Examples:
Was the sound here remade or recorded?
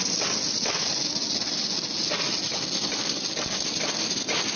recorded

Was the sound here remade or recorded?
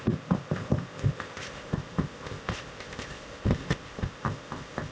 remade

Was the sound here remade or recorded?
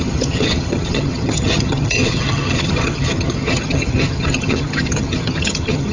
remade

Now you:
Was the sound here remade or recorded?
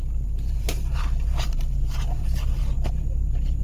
remade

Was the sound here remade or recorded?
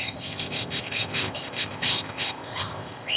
remade